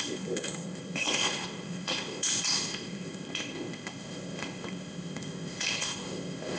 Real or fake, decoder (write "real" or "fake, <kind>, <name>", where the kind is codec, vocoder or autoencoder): fake, codec, ZipCodec